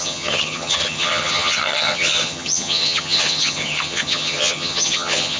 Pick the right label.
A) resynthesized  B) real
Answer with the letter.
A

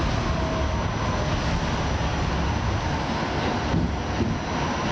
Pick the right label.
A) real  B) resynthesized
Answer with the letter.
A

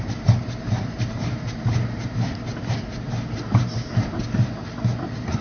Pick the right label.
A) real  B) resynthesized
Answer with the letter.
A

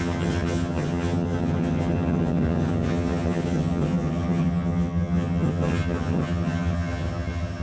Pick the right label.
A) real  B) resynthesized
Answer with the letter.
B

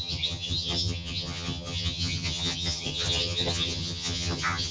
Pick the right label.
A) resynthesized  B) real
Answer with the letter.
A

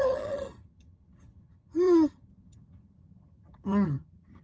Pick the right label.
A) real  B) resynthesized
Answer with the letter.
B